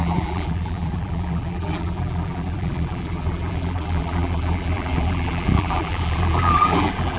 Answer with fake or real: fake